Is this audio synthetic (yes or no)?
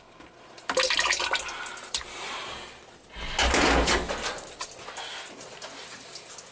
no